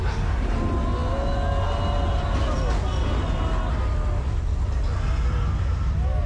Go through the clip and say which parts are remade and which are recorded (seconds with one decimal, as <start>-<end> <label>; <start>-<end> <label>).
0.0-6.3 recorded